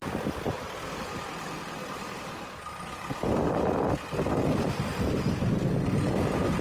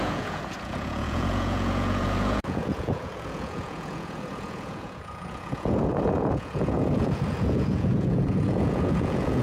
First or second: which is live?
first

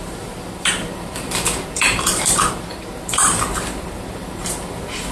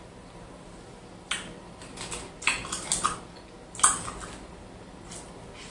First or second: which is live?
second